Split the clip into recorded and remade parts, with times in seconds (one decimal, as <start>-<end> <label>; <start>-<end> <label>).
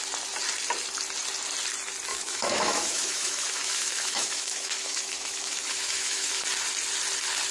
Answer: 0.0-2.1 recorded; 2.1-6.4 remade; 6.4-7.5 recorded